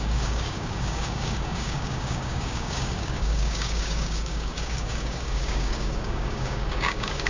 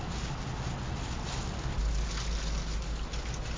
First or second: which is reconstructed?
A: first